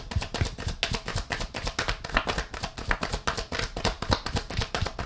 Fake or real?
real